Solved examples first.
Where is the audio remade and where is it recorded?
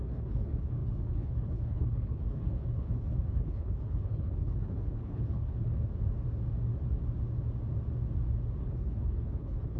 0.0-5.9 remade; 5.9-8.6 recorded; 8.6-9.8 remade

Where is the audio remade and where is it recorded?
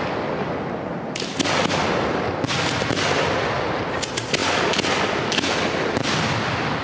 0.0-6.8 recorded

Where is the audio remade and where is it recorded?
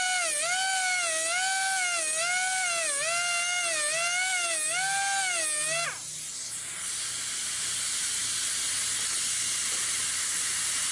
0.0-10.9 recorded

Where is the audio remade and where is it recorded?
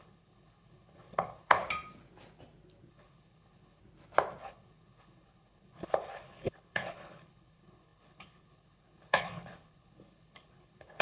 0.0-1.6 remade; 1.6-2.9 recorded; 2.9-3.8 remade; 3.8-4.4 recorded; 4.4-11.0 remade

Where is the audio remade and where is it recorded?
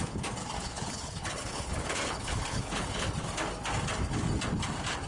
0.0-0.4 recorded; 0.4-3.1 remade; 3.1-5.1 recorded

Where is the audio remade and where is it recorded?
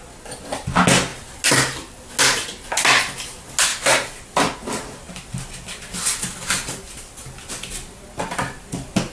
0.0-9.1 recorded